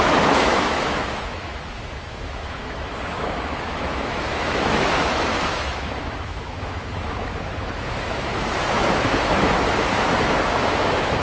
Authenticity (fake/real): fake